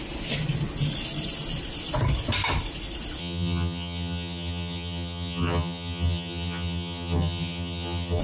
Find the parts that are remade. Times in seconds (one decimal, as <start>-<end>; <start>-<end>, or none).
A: 3.2-8.2